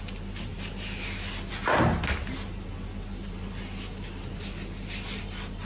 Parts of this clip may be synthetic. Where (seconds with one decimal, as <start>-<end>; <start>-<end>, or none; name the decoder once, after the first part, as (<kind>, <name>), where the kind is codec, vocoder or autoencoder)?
none